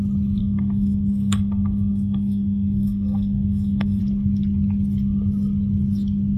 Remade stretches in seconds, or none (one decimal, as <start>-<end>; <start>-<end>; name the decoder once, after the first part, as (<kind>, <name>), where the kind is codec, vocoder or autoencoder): 0.4-4.0 (codec, SNAC)